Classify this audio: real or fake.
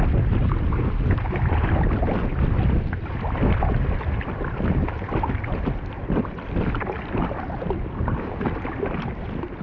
real